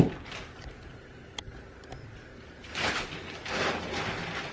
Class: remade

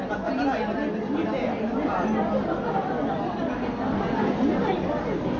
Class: recorded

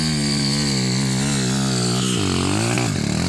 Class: recorded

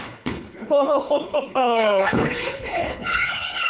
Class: remade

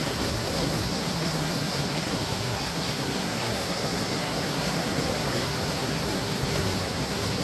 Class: remade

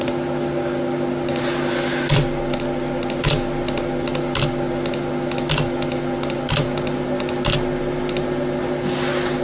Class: recorded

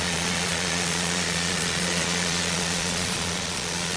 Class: remade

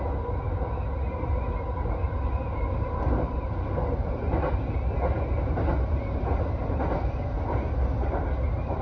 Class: recorded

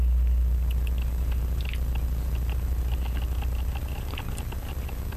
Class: recorded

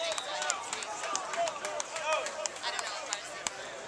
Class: recorded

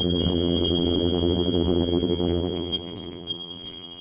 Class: remade